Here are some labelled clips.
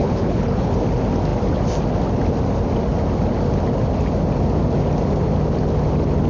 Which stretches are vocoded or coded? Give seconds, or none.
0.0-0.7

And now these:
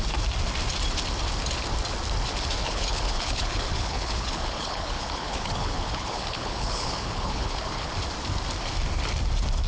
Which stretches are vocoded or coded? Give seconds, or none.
2.6-7.9

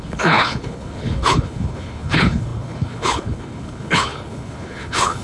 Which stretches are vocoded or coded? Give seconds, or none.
0.0-5.2

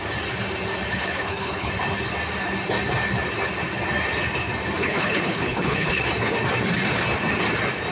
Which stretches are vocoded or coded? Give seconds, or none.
0.9-1.7; 4.8-6.0

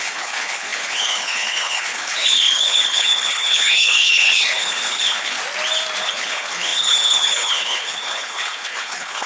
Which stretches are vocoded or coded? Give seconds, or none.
0.0-5.4; 6.0-9.3

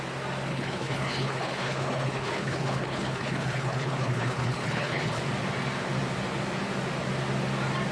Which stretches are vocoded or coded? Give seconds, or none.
0.5-5.2